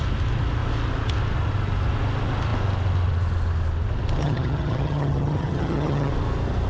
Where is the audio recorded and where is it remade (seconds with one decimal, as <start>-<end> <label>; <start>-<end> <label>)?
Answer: 0.0-4.2 recorded; 4.2-6.1 remade; 6.1-6.7 recorded